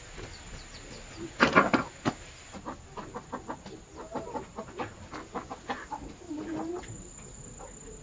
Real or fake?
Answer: real